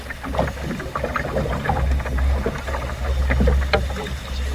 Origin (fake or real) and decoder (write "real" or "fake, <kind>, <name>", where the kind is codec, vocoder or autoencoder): real